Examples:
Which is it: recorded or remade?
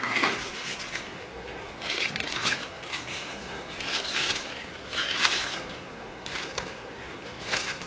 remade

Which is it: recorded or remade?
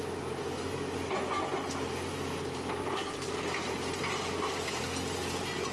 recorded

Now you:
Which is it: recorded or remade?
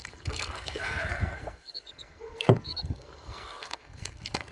remade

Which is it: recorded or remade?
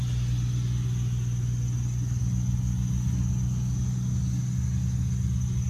recorded